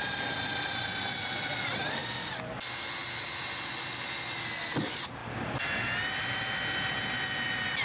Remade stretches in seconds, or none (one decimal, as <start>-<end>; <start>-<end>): none